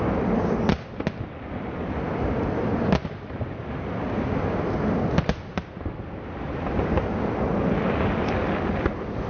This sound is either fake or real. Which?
real